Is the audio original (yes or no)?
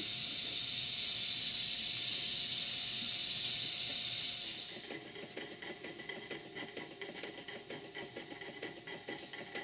yes